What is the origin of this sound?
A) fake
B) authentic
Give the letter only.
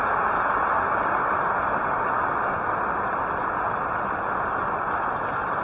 B